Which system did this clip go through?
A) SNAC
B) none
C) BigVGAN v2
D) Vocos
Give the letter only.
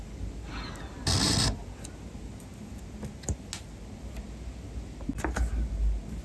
B